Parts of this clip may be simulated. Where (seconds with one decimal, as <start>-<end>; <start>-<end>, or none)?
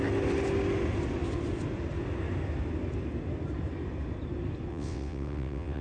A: 4.7-5.8